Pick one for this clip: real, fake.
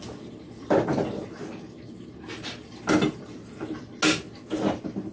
real